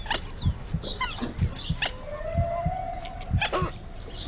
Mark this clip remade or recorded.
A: recorded